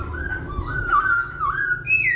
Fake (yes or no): no